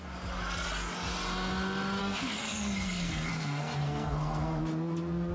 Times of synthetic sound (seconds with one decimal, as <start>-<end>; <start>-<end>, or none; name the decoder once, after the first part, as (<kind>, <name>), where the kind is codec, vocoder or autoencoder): 2.0-4.6 (codec, SNAC)